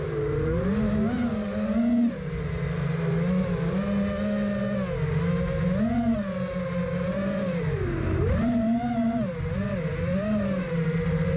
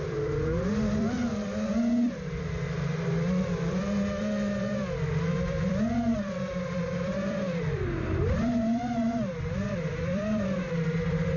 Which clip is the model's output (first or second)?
second